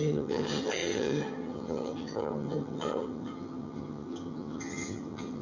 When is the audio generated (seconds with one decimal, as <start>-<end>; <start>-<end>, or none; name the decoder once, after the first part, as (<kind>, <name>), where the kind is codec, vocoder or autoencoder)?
0.0-5.4 (vocoder, HiFi-GAN)